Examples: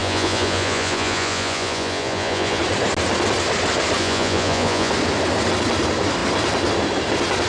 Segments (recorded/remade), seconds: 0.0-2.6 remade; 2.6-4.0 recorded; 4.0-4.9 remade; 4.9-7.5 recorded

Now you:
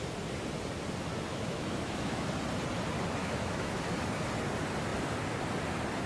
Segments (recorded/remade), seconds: 0.0-1.3 recorded; 1.3-2.3 remade; 2.3-3.2 recorded; 3.2-3.8 remade; 3.8-6.1 recorded

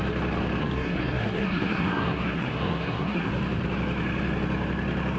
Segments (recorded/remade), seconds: 0.0-0.6 recorded; 0.6-3.3 remade; 3.3-5.2 recorded